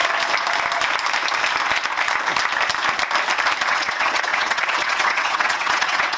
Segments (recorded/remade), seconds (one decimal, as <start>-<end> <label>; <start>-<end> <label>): 0.0-3.7 recorded; 3.7-6.2 remade